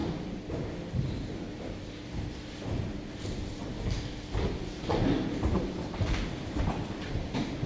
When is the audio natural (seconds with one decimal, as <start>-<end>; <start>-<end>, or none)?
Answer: 0.0-7.7